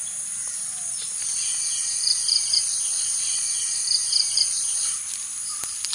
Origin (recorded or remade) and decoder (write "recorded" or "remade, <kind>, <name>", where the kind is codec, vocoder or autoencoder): remade, vocoder, BigVGAN v2